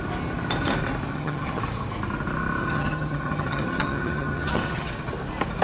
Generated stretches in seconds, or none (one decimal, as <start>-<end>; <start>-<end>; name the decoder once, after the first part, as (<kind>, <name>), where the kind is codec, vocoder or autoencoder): 1.1-1.6 (vocoder, HiFi-GAN); 2.6-4.9